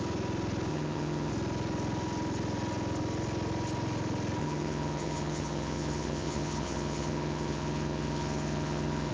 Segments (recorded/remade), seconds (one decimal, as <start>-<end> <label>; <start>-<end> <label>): 0.0-0.7 recorded; 0.7-1.3 remade; 1.3-4.4 recorded; 4.4-9.1 remade